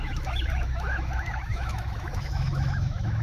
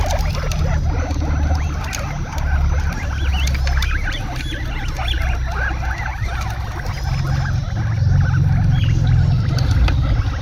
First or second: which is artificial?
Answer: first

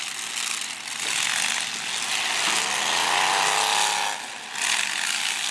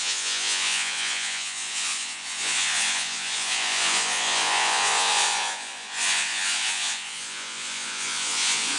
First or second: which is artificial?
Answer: second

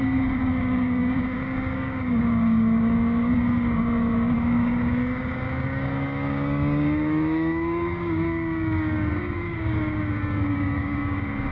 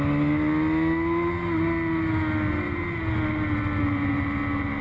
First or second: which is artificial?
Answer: first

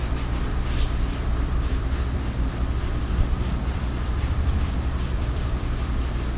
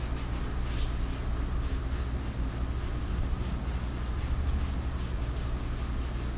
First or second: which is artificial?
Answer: first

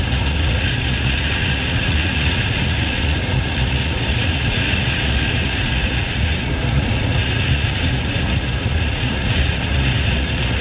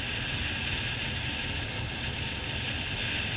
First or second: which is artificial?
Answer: first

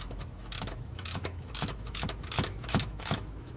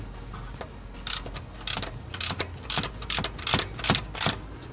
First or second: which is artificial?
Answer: first